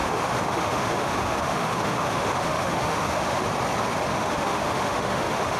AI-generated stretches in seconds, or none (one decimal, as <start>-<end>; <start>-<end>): 0.0-3.4; 4.1-5.6